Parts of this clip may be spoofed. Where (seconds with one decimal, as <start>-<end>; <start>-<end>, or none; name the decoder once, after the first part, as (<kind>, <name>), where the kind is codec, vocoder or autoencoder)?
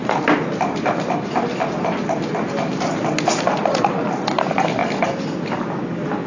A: none